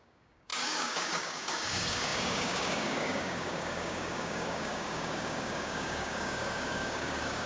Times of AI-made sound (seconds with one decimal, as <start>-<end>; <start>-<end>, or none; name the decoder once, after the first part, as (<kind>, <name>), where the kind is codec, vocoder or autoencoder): 0.0-7.5 (codec, DAC)